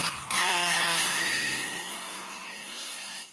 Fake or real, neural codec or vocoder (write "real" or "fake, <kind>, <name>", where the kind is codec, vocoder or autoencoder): fake, codec, SNAC